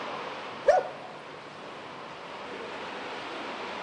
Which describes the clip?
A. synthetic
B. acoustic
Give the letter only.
B